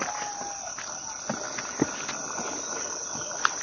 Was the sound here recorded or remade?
recorded